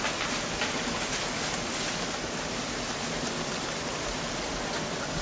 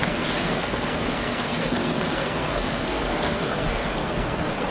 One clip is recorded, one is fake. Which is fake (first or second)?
second